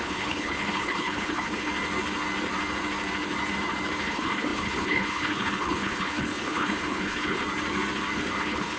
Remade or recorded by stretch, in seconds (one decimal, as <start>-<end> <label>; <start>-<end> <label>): 0.0-1.7 remade; 1.7-4.0 recorded; 4.0-7.4 remade; 7.4-8.4 recorded; 8.4-8.8 remade